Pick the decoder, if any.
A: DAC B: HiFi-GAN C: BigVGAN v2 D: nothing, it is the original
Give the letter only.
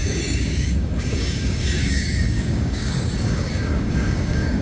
A